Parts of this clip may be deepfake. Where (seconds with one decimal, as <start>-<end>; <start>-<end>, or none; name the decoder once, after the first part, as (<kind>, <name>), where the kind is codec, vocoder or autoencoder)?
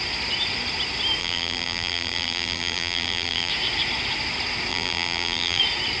1.2-3.5 (vocoder, BigVGAN v2); 4.7-5.6